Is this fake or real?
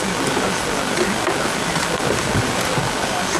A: real